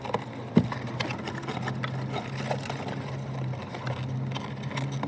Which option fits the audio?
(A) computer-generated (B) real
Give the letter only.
B